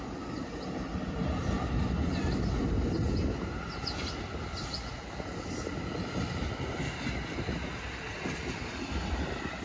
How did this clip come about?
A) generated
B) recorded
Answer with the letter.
B